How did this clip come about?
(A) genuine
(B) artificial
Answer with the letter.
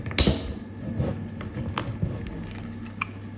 A